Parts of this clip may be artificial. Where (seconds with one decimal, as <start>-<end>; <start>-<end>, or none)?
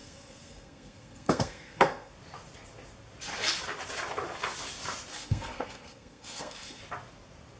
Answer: 0.0-2.1; 5.1-6.8